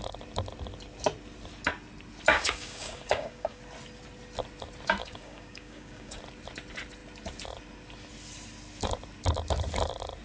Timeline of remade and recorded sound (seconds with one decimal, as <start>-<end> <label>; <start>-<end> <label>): 0.0-2.3 recorded; 2.3-3.6 remade; 3.6-5.0 recorded; 5.0-6.2 remade; 6.2-10.2 recorded